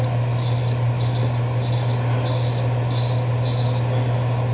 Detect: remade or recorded recorded